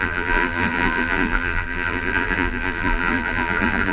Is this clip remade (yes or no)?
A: yes